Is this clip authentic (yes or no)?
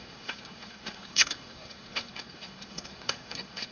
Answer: no